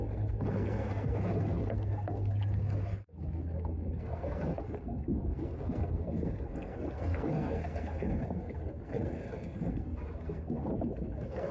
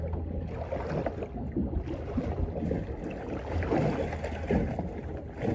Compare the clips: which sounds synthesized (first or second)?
first